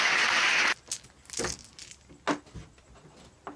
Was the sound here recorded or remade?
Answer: recorded